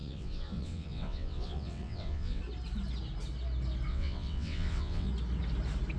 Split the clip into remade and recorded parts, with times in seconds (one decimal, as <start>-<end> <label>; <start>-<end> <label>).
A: 0.0-2.4 remade; 2.4-3.9 recorded; 3.9-5.1 remade; 5.1-6.0 recorded

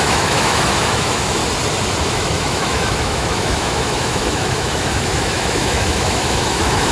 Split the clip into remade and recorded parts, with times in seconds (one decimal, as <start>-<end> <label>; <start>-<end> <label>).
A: 0.0-1.4 remade; 1.4-2.0 recorded; 2.0-6.9 remade

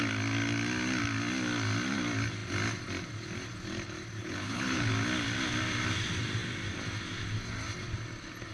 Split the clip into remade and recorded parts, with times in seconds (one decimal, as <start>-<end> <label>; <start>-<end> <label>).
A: 0.0-4.2 recorded; 4.2-4.9 remade; 4.9-8.5 recorded